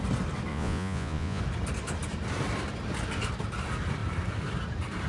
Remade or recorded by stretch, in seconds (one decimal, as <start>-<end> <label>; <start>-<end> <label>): 0.0-0.5 recorded; 0.5-1.4 remade; 1.4-5.1 recorded